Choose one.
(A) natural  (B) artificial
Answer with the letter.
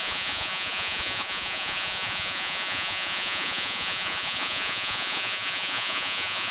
B